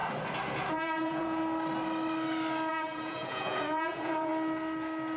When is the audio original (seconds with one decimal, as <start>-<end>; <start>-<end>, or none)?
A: 0.0-0.7; 1.4-2.7; 4.3-5.2